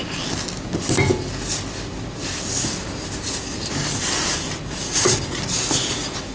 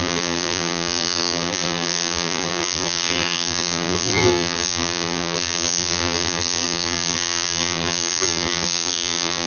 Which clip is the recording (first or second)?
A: first